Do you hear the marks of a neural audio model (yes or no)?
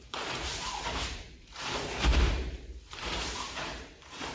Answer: yes